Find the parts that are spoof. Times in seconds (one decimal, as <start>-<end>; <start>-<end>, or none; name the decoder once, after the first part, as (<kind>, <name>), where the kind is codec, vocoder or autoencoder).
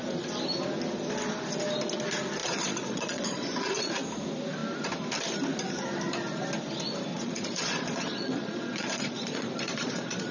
2.4-3.9 (vocoder, Vocos); 7.1-10.3